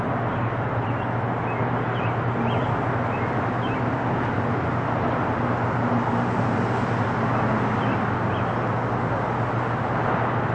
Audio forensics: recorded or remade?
recorded